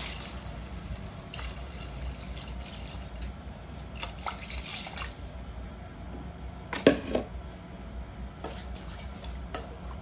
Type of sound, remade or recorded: recorded